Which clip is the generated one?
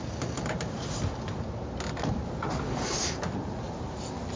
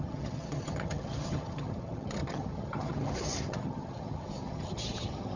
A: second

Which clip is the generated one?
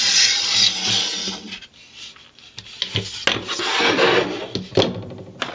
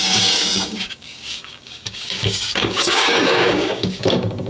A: second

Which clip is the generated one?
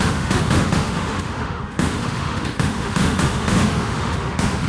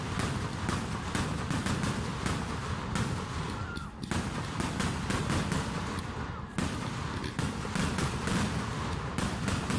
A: first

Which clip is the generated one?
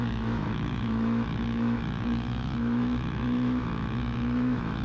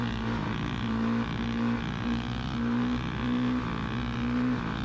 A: first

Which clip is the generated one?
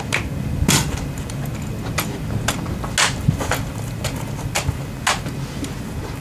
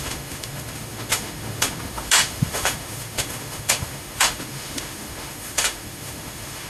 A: second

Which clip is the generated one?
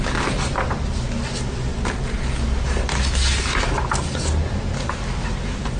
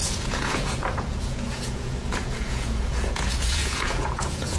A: second